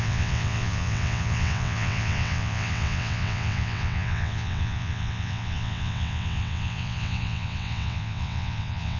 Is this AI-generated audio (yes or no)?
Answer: yes